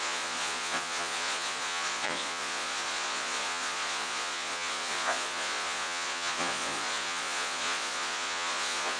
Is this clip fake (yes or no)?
yes